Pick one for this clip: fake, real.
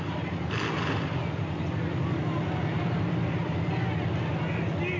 real